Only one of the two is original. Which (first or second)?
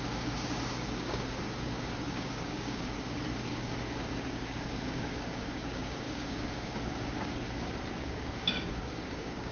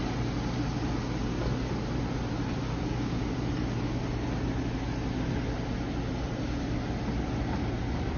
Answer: second